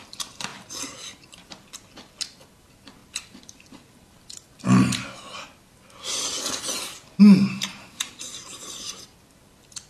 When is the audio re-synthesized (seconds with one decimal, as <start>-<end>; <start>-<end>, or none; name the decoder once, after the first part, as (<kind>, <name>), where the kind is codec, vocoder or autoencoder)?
0.5-1.7 (vocoder, BigVGAN v2); 7.4-8.9